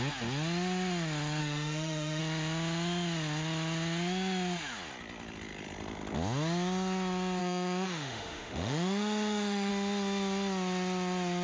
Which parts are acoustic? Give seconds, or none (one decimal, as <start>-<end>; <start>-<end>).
0.0-1.4; 2.2-7.4; 9.7-11.4